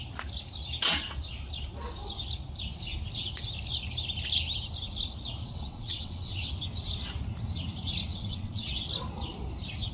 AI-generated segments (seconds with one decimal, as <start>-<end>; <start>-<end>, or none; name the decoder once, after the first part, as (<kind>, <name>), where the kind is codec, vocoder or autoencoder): 5.4-6.5 (vocoder, WaveNeXt); 8.1-8.7